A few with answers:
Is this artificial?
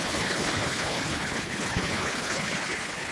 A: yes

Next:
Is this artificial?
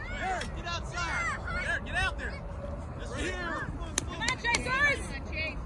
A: no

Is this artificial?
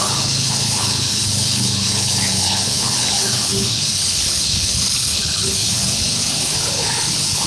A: yes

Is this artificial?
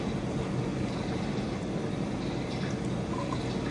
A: no